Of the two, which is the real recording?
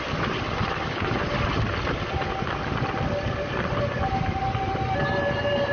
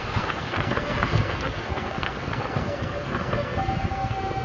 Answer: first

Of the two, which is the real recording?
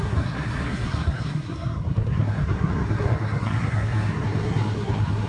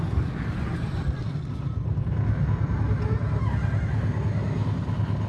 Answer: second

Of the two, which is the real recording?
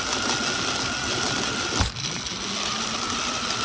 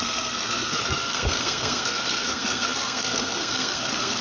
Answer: first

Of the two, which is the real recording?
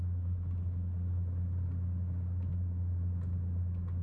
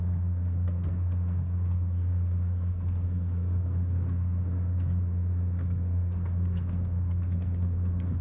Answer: first